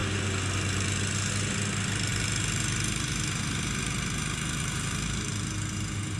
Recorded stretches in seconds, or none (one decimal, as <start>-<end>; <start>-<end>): 0.0-6.2